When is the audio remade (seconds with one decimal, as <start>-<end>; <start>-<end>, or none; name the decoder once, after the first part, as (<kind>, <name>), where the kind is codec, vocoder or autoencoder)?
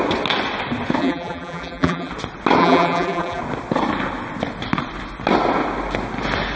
1.0-2.1 (vocoder, BigVGAN v2); 2.6-3.4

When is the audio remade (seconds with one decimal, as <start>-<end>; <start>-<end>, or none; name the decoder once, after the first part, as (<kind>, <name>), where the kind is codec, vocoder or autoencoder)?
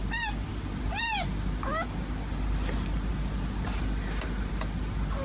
none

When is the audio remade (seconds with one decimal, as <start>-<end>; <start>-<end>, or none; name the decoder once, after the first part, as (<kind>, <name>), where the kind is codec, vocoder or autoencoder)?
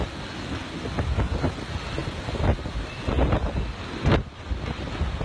none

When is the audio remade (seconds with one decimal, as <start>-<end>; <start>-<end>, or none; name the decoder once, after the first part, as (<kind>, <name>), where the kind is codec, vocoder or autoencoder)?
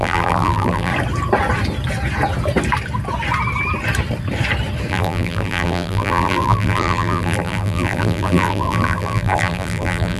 0.0-0.9 (vocoder, BigVGAN v2); 4.9-10.2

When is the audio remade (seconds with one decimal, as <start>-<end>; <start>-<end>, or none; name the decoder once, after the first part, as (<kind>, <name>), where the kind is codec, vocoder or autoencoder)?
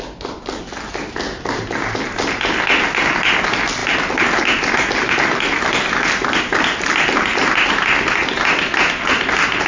none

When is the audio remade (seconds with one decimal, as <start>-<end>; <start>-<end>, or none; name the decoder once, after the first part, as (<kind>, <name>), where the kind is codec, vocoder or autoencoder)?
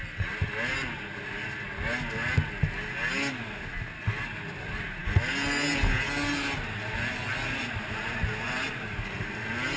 none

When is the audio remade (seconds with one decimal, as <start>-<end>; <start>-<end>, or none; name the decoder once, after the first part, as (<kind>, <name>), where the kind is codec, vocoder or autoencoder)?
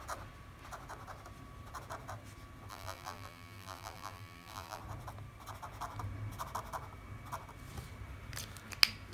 2.7-4.8 (vocoder, BigVGAN v2)